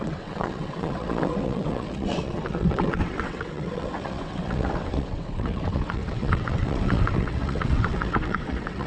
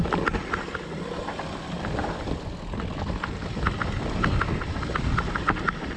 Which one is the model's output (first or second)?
first